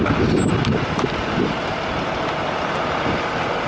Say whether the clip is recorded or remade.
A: recorded